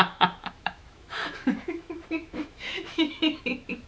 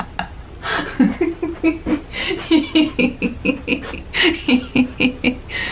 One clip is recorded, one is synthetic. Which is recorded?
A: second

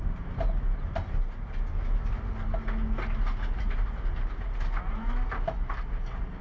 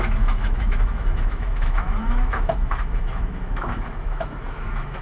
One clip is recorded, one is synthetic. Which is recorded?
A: first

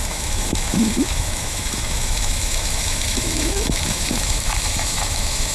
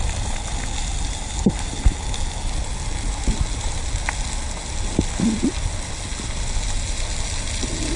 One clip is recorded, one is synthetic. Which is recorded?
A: second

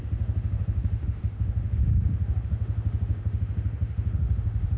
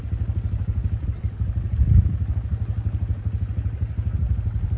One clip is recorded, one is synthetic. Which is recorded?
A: second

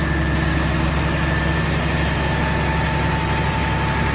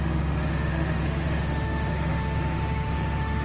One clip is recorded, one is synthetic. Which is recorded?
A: first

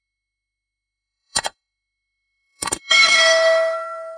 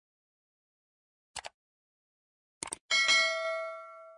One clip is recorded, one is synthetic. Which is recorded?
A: second